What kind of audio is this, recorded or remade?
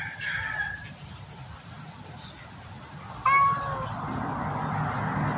recorded